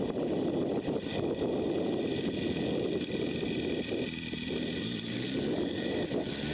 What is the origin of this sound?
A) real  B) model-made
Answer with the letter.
A